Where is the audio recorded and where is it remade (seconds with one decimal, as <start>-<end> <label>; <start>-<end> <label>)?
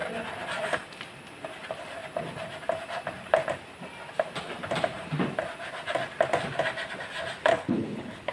0.0-7.5 recorded; 7.5-8.3 remade